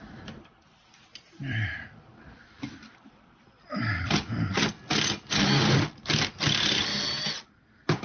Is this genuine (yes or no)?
no